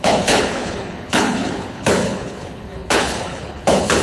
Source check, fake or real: fake